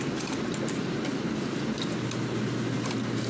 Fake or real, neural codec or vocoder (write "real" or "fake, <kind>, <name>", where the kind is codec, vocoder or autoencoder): real